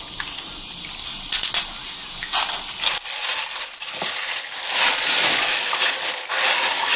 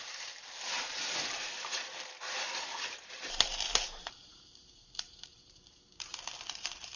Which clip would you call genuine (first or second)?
first